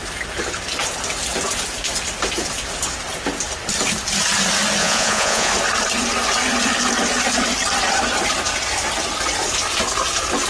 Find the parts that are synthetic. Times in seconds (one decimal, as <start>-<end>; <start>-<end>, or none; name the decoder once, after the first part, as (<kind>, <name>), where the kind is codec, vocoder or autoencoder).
4.8-5.5 (vocoder, Vocos)